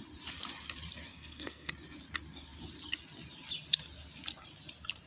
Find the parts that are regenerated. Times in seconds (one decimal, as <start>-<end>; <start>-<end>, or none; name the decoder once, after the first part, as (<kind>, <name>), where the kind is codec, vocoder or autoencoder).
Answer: 1.1-1.7 (codec, SNAC)